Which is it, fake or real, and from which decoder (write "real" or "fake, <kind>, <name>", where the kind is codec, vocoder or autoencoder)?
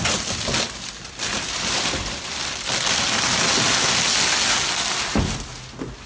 real